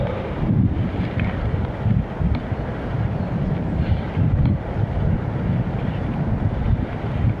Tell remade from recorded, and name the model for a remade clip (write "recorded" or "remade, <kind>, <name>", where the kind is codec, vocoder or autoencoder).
recorded